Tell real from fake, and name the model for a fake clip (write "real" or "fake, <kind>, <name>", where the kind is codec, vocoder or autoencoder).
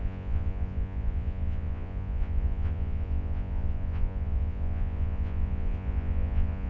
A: fake, vocoder, Vocos